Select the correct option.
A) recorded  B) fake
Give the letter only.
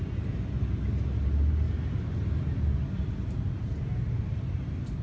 A